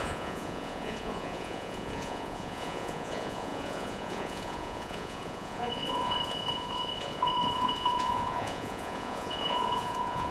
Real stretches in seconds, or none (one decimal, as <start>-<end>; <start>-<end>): none